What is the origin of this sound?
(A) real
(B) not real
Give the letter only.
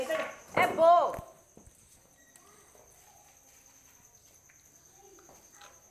A